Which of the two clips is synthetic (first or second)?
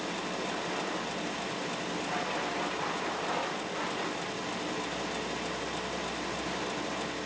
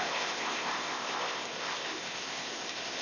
second